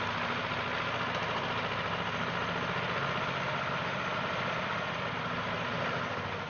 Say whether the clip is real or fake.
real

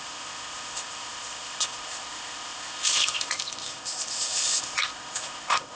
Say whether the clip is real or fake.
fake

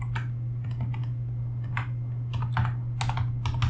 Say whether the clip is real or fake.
real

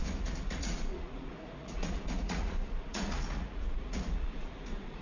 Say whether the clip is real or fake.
fake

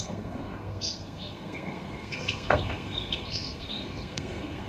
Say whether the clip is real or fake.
fake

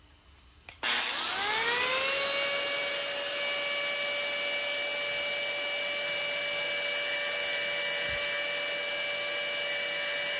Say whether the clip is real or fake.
real